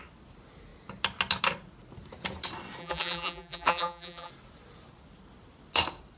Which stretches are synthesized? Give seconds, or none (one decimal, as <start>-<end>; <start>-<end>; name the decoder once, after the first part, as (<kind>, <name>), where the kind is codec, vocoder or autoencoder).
2.8-4.3 (vocoder, BigVGAN v2)